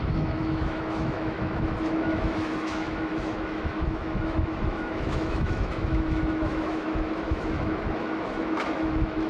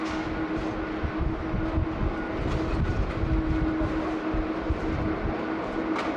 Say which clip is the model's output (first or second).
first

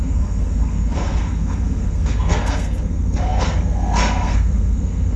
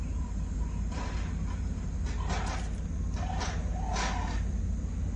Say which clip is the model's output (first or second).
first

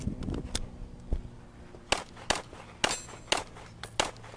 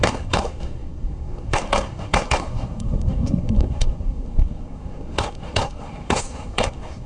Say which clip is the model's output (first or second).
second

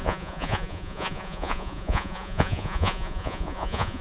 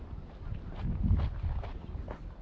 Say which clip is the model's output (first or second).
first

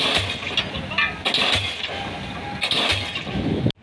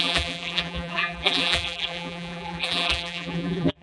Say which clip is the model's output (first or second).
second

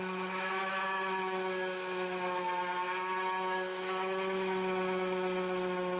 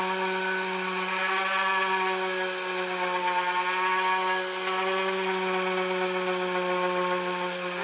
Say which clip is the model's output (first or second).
first